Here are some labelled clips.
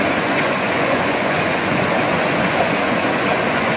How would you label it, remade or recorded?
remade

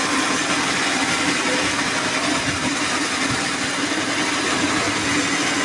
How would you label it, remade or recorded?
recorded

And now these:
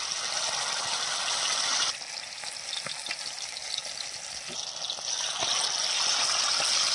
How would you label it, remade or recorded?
recorded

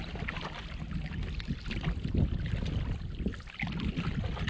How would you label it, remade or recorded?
recorded